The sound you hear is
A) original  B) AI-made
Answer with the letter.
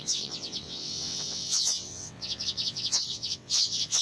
B